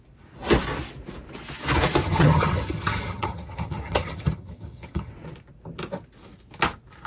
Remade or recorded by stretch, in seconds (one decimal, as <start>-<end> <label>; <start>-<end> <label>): 0.0-2.0 recorded; 2.0-5.1 remade; 5.1-7.1 recorded